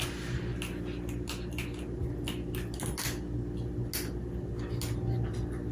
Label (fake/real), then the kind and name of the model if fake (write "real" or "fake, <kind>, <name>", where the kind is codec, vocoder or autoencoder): real